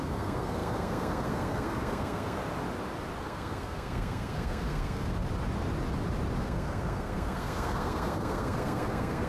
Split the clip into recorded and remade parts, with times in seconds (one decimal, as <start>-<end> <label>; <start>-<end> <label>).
0.0-2.4 remade; 2.4-3.2 recorded; 3.2-5.1 remade; 5.1-6.4 recorded; 6.4-9.3 remade